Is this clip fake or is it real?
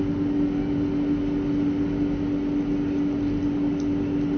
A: real